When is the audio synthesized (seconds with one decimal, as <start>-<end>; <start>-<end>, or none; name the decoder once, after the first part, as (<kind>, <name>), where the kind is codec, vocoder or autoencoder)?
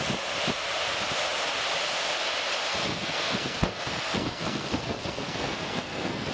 2.7-6.3 (codec, SNAC)